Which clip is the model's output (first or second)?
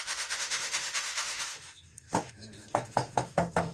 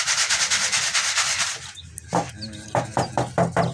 first